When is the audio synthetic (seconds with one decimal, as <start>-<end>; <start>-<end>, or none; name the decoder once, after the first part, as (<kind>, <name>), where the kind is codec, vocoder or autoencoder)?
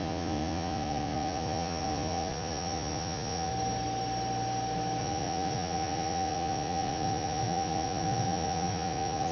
0.0-3.5 (vocoder, Vocos); 5.0-9.3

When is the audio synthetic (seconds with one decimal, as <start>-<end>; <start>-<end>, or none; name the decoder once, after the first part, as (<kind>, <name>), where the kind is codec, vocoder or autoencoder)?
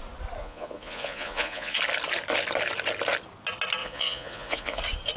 0.4-1.8 (vocoder, Vocos); 3.8-4.8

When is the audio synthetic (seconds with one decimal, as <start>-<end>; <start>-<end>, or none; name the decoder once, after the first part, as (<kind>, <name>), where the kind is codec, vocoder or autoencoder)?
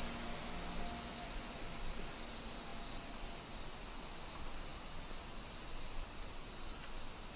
1.1-1.6 (vocoder, Vocos)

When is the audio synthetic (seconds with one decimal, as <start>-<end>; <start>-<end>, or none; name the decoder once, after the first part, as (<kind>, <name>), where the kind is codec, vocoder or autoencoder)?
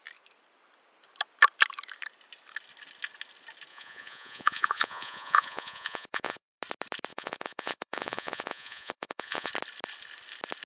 3.7-6.6 (vocoder, Vocos); 7.1-9.5